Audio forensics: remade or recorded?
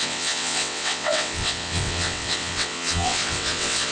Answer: remade